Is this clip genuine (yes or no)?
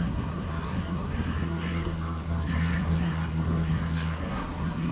no